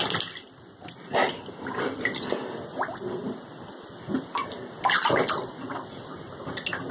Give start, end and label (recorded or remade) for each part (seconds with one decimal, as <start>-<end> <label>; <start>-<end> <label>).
0.0-6.9 recorded